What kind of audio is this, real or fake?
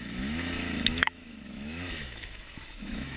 fake